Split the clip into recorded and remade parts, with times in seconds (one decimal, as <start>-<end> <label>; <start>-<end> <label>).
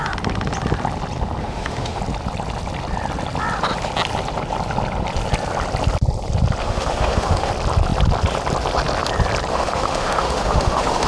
0.0-1.4 recorded; 1.4-2.0 remade; 2.0-6.6 recorded; 6.6-7.5 remade; 7.5-9.5 recorded; 9.5-11.1 remade